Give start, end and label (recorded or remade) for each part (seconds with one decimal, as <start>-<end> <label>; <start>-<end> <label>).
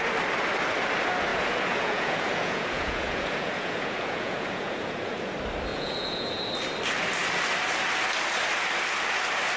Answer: 0.0-1.3 recorded; 1.3-5.3 remade; 5.3-5.7 recorded; 5.7-6.5 remade; 6.5-9.6 recorded